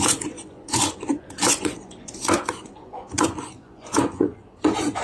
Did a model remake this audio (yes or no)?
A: yes